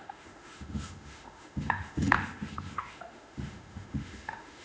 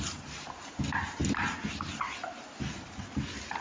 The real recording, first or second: second